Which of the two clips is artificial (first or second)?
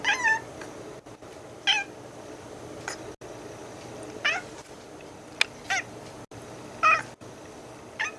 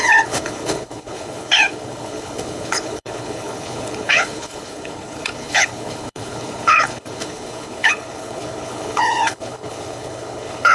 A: second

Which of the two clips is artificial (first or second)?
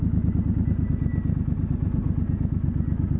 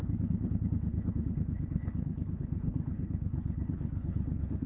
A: second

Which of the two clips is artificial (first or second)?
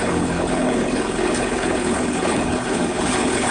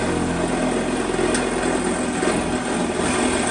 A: first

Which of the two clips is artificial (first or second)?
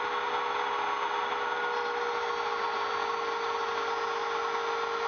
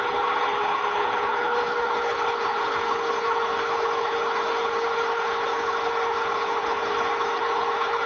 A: second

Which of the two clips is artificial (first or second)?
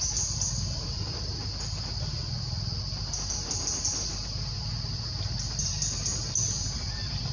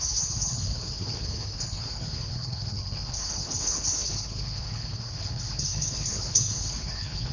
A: second